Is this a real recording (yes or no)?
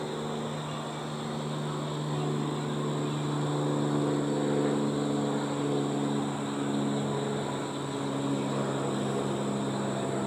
yes